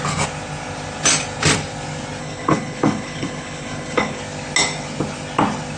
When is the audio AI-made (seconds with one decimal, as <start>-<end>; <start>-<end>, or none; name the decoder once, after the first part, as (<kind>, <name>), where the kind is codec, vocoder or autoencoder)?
2.2-4.2 (codec, HILCodec)

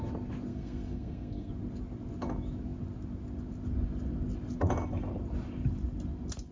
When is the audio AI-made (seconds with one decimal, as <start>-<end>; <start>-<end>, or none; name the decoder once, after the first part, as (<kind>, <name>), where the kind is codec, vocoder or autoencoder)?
0.5-1.5 (codec, SNAC)

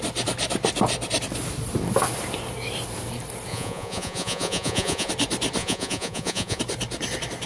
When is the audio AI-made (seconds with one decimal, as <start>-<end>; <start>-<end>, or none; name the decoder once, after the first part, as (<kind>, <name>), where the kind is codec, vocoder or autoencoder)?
3.5-5.1 (vocoder, Vocos); 5.6-6.6

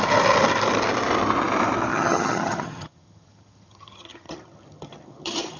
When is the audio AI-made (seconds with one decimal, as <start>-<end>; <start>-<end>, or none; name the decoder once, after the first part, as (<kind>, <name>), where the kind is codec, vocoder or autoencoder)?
1.9-5.6 (vocoder, HiFi-GAN)

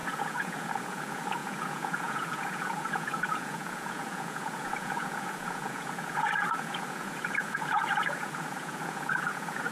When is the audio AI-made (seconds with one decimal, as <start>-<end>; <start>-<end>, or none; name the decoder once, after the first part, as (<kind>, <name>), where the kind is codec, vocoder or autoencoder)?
0.0-9.7 (vocoder, Vocos)

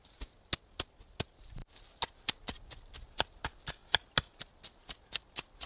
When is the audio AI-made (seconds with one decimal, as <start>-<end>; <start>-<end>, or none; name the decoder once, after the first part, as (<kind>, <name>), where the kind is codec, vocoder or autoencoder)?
none

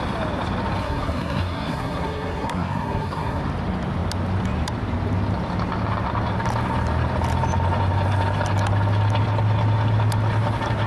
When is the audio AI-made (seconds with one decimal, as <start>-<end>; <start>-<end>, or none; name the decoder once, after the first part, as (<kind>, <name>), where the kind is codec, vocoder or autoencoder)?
0.8-3.4 (codec, SNAC)

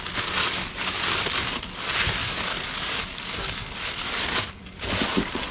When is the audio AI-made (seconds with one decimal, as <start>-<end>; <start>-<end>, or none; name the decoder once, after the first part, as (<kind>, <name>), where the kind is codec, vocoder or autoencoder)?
0.4-1.7 (codec, DAC); 2.2-4.5